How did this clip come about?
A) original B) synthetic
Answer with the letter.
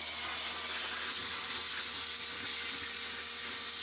A